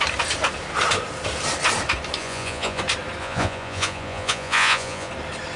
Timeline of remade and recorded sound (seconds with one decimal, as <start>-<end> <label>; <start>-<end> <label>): 0.0-2.2 recorded; 2.2-2.8 remade; 2.8-3.2 recorded; 3.2-5.1 remade; 5.1-5.6 recorded